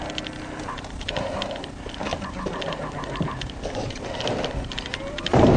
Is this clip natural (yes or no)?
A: yes